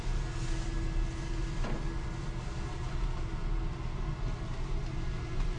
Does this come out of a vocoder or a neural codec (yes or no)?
no